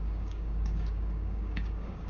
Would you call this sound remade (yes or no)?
yes